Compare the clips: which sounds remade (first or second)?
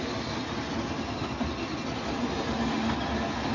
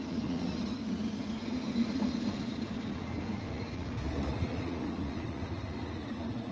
second